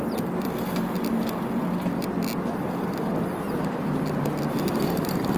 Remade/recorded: recorded